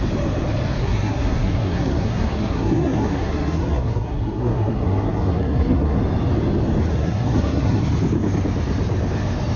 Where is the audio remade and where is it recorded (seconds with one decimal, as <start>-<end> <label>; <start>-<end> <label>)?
0.0-0.8 recorded; 0.8-6.0 remade; 6.0-6.9 recorded; 6.9-7.8 remade; 7.8-9.6 recorded